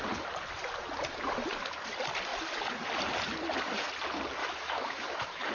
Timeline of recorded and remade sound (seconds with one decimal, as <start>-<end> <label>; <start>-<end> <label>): 0.0-4.4 recorded; 4.4-5.5 remade